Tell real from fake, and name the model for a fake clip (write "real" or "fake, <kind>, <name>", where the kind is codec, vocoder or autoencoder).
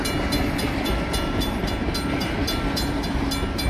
real